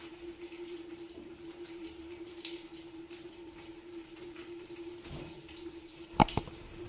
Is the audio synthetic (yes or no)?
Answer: yes